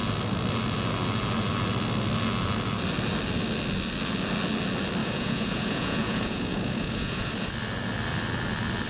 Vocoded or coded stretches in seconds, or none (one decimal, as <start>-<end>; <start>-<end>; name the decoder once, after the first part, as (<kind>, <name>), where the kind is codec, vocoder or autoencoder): 5.0-7.5 (vocoder, Vocos)